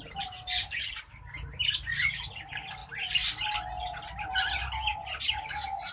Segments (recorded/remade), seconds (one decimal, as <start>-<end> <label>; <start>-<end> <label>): 0.0-5.9 recorded